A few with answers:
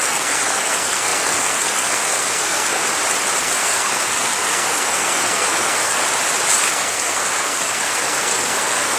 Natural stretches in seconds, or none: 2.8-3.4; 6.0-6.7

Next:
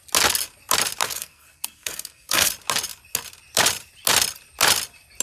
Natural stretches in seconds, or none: 0.0-1.0; 2.5-5.2

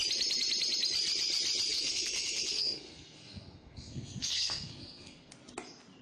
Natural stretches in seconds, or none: 0.0-1.7; 5.3-6.0